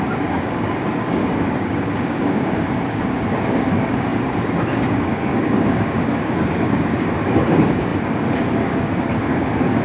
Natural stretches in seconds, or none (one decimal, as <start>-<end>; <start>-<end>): none